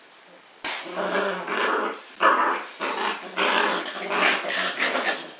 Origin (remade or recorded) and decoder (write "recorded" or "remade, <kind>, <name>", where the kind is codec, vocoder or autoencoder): recorded